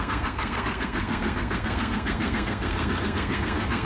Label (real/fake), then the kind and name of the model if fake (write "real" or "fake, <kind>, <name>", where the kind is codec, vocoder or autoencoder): fake, codec, SNAC